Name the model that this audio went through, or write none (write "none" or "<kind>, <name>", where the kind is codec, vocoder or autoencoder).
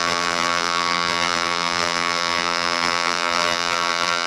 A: vocoder, BigVGAN v2